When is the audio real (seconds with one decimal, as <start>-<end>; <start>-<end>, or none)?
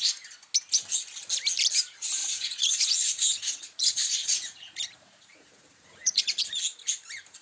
0.0-2.2; 6.6-7.4